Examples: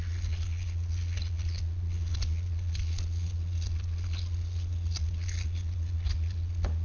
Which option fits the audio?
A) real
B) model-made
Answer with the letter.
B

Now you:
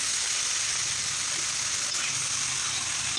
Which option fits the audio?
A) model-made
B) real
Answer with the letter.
B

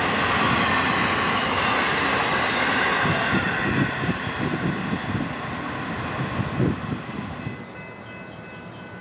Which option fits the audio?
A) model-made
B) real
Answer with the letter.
B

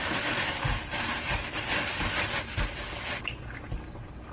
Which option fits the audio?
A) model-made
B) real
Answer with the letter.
B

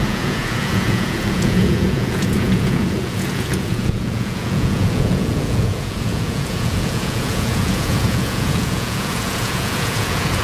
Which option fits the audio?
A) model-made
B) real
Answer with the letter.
A